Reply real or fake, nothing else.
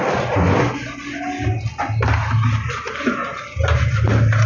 real